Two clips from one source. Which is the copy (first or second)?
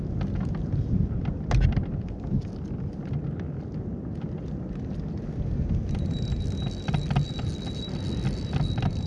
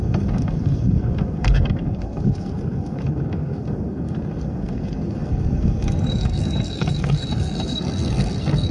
second